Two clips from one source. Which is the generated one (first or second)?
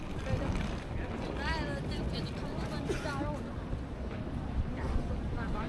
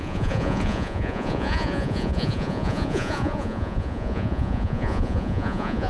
second